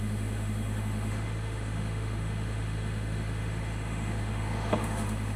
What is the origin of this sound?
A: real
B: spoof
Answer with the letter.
B